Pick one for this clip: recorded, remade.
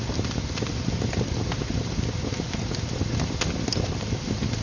recorded